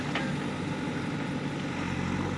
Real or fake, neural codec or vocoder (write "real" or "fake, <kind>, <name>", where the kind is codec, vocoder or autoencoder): real